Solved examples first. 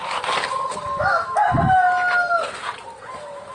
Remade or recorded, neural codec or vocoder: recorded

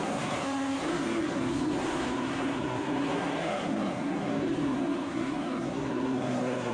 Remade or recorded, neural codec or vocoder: remade, codec, SNAC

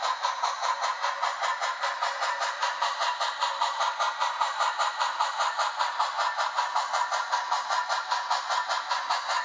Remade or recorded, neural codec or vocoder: remade, vocoder, BigVGAN v2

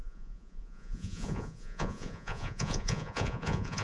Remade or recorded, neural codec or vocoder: remade, vocoder, Vocos